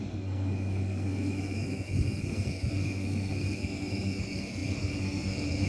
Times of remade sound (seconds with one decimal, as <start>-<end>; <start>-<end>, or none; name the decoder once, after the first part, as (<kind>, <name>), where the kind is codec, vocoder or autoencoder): 0.0-5.7 (codec, SNAC)

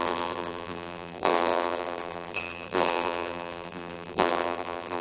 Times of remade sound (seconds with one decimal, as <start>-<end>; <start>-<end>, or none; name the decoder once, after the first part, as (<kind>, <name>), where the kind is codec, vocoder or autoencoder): 0.0-5.0 (vocoder, BigVGAN v2)

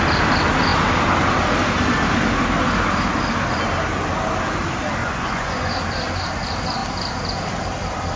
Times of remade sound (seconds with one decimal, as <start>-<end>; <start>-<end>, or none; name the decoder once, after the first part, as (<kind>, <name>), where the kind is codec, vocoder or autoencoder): 5.0-5.7 (vocoder, Vocos)

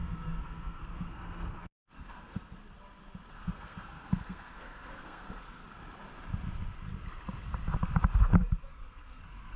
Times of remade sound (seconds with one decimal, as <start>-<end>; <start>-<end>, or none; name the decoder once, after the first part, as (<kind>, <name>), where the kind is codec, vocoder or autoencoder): 0.0-2.6 (codec, SNAC); 3.3-5.6; 8.7-9.6

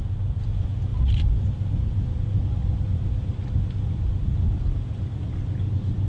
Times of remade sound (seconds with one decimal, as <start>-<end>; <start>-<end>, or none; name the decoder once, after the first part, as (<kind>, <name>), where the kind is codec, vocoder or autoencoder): 0.0-0.5 (vocoder, BigVGAN v2); 0.9-2.3; 4.3-5.3